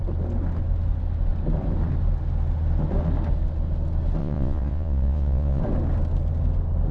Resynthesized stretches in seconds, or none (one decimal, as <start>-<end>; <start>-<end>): 4.2-5.6